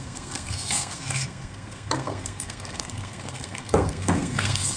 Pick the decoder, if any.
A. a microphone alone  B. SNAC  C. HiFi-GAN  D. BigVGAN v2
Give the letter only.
B